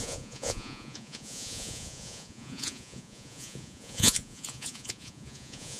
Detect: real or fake fake